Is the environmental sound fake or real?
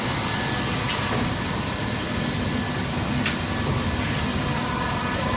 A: real